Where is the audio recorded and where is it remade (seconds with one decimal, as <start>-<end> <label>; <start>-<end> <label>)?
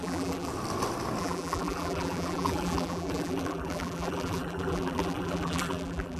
0.0-0.5 remade; 0.5-1.2 recorded; 1.2-6.2 remade